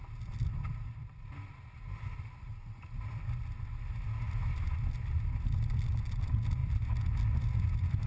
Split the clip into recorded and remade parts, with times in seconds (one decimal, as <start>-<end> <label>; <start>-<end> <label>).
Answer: 0.0-8.1 recorded